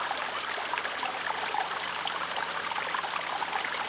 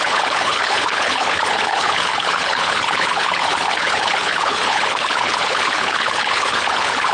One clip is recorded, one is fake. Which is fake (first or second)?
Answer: second